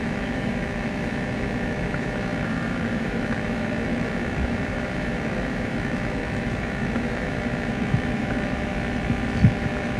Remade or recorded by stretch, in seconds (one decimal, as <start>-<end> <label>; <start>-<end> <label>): 0.0-8.7 remade; 8.7-9.5 recorded; 9.5-10.0 remade